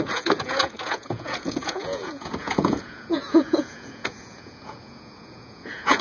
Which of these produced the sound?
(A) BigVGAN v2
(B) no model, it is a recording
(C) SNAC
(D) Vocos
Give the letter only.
D